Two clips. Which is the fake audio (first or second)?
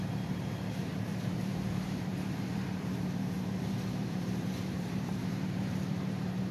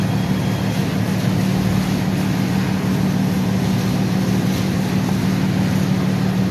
first